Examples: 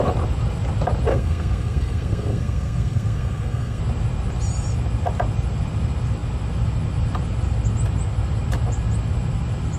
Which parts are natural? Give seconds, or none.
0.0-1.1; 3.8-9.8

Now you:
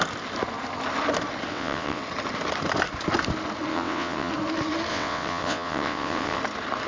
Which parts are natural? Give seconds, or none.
0.0-1.5; 2.0-3.7; 4.3-4.9; 6.4-6.9